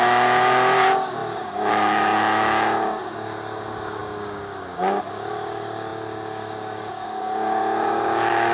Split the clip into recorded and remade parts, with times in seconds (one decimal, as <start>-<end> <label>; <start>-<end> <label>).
0.0-8.5 remade